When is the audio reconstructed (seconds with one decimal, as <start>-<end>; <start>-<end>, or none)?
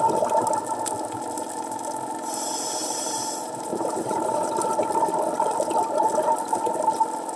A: 2.8-4.5